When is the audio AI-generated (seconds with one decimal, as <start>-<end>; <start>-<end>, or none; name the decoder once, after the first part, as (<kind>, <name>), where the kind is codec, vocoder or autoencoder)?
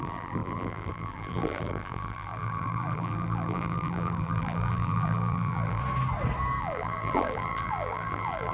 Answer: 0.0-5.8 (vocoder, BigVGAN v2); 6.6-8.5